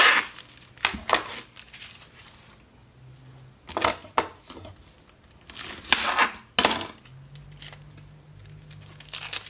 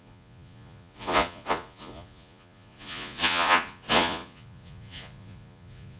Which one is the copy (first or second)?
second